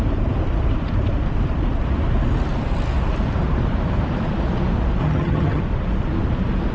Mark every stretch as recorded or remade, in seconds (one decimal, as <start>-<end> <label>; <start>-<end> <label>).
0.0-5.0 recorded; 5.0-5.6 remade; 5.6-6.7 recorded